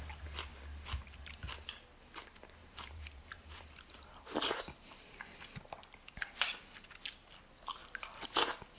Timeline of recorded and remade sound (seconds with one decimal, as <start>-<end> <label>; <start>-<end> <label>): 0.0-2.6 recorded; 2.6-4.4 remade; 4.4-7.8 recorded; 7.8-8.4 remade; 8.4-8.8 recorded